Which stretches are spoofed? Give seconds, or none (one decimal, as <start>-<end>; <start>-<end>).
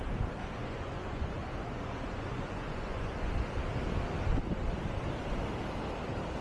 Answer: 0.4-3.3